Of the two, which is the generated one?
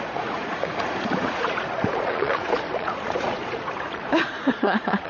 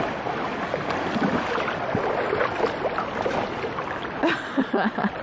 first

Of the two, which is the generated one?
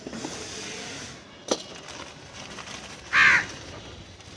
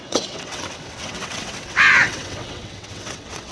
second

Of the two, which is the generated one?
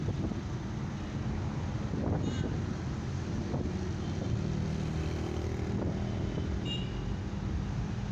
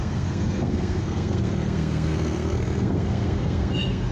second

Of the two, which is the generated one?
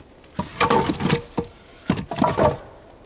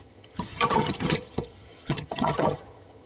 second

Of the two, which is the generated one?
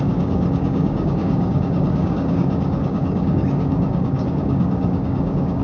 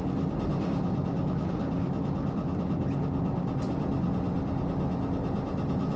first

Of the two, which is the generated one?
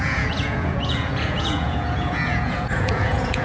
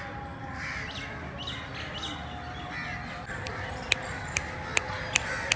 first